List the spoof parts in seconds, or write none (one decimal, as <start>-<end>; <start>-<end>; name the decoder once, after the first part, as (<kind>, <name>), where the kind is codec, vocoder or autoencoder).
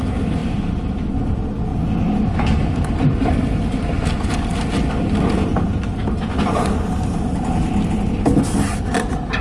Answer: 0.0-1.7 (vocoder, BigVGAN v2); 2.8-9.4